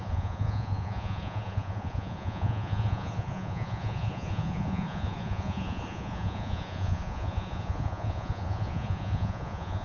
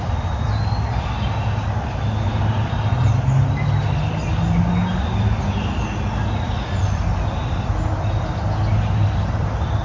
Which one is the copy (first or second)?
first